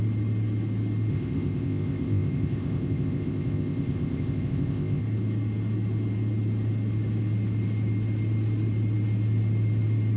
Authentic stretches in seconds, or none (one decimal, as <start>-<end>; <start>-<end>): 0.0-1.1; 5.0-10.2

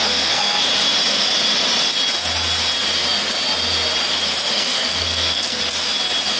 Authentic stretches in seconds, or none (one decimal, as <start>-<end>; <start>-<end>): 0.7-4.5; 5.6-6.4

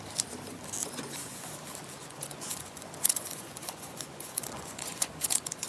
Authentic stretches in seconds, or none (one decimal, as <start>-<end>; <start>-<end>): 0.0-0.8; 1.5-2.0

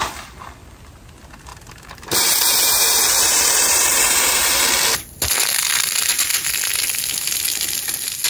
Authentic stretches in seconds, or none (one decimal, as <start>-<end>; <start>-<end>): 0.0-1.5; 4.6-8.3

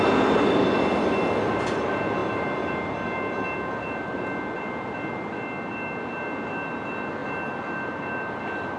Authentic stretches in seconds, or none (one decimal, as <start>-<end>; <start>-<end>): 0.0-8.8